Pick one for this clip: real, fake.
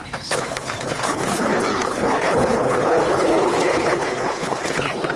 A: fake